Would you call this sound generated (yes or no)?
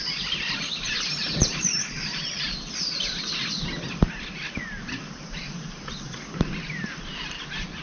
yes